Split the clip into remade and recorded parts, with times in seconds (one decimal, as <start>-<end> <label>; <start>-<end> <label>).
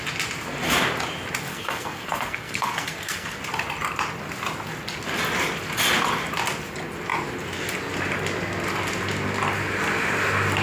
0.0-1.5 recorded; 1.5-3.4 remade; 3.4-10.6 recorded